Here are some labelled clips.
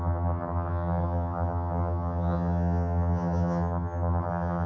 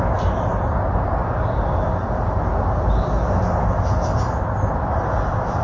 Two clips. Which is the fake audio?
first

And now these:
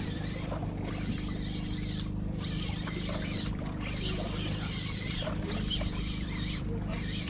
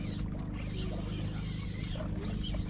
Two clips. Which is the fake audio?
first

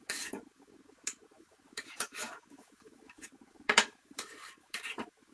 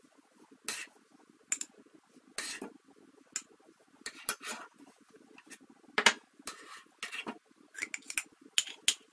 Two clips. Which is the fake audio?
first